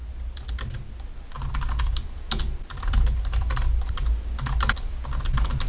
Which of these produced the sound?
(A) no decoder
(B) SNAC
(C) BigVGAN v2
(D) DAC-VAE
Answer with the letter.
A